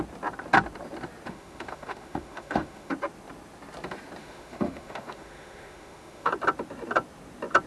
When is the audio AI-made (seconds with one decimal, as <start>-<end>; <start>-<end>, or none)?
1.3-2.9; 4.2-6.3